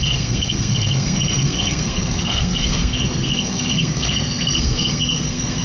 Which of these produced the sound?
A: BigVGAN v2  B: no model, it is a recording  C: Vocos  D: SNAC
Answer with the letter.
D